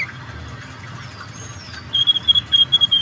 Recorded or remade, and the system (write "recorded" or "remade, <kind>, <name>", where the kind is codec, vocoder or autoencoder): recorded